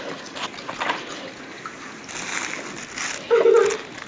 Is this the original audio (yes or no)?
yes